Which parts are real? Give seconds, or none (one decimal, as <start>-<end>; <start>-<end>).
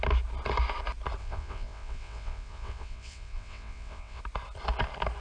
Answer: 0.0-1.2; 4.2-5.2